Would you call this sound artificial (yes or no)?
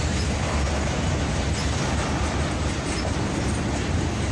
no